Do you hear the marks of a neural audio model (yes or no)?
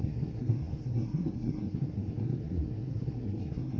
yes